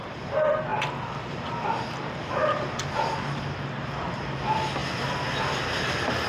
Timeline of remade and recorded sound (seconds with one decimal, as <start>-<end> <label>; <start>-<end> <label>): 0.0-6.3 recorded

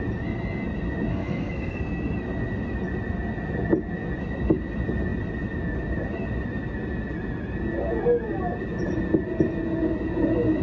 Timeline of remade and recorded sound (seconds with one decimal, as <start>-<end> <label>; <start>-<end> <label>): 0.0-1.1 recorded; 1.1-1.8 remade; 1.8-10.6 recorded

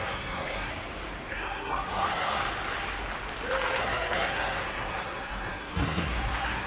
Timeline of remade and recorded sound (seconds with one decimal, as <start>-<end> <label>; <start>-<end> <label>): 0.0-0.7 remade; 0.7-1.3 recorded; 1.3-2.4 remade; 2.4-3.8 recorded; 3.8-6.7 remade